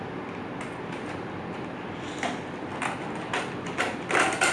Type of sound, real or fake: real